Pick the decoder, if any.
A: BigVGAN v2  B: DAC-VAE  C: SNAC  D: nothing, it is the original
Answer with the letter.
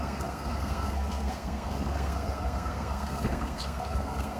C